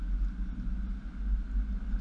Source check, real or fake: real